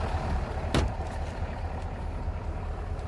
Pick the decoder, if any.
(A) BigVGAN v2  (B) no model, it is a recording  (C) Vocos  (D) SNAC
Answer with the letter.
B